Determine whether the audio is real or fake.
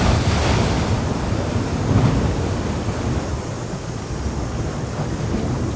real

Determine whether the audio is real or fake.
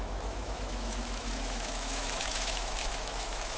fake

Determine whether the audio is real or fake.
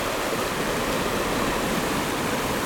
real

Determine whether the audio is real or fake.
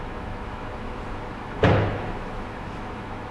fake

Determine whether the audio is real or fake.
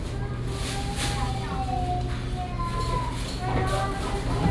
real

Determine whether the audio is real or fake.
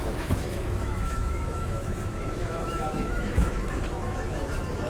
fake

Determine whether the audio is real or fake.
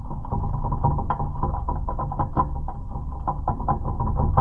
real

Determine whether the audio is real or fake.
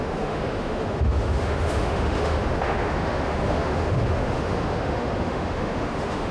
fake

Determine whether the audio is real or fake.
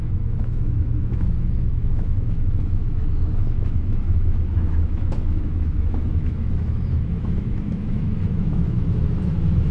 fake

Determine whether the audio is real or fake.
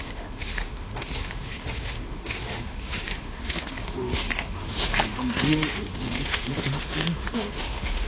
fake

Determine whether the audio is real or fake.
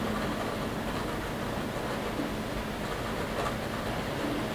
real